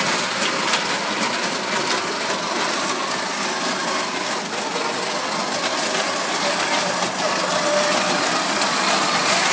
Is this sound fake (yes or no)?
no